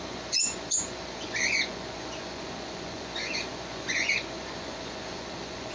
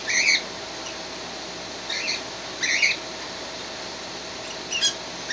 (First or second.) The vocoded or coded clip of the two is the first